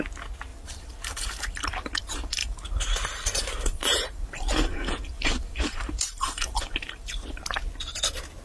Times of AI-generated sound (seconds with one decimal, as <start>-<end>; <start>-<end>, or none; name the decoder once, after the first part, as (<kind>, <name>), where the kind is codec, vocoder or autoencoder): 0.5-2.0 (vocoder, BigVGAN v2); 2.4-7.4